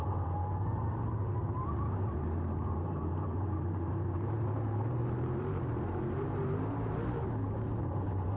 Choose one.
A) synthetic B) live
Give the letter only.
A